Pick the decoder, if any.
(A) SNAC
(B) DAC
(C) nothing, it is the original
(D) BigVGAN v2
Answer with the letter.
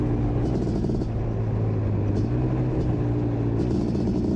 C